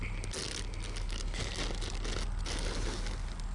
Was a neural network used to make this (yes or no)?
no